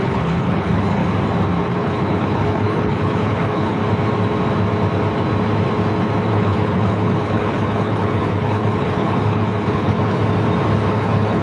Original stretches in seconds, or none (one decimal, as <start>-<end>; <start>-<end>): 1.0-1.7; 3.8-6.3; 10.2-10.9